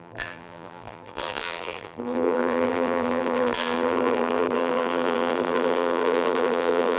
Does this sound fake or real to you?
fake